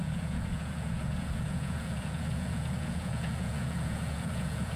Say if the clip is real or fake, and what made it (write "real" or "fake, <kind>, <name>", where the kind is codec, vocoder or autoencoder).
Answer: fake, vocoder, Vocos